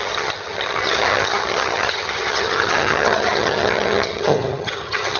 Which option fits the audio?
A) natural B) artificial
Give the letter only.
B